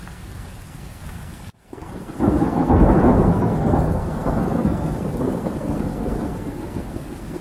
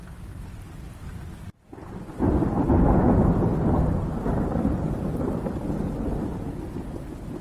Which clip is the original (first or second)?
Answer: second